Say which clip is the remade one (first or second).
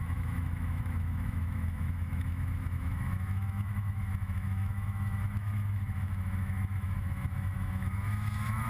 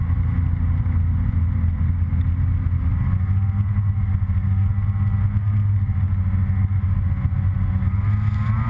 first